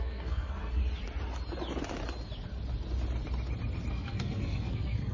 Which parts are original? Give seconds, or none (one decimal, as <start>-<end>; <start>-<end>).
0.8-3.9